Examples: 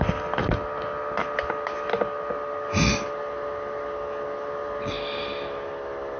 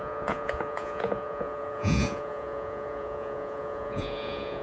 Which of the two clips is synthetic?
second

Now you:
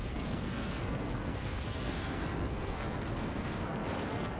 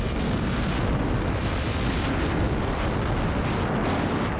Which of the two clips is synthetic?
first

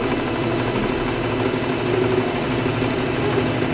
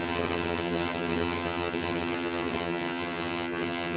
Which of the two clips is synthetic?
second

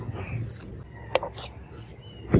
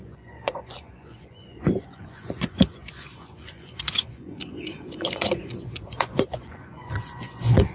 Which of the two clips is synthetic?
second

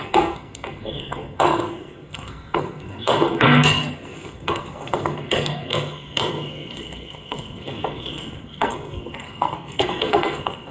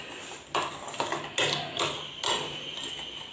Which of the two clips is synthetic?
first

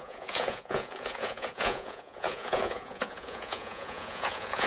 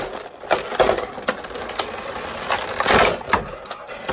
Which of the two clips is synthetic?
first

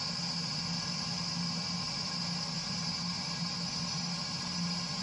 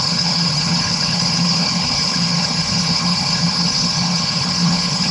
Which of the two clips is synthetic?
second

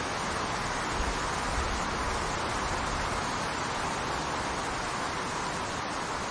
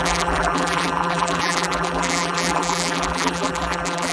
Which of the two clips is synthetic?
second